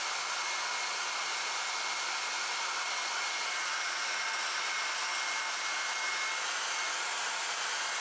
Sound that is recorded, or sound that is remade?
recorded